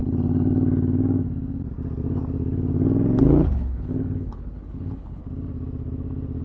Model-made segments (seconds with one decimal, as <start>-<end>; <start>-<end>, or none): 3.2-5.2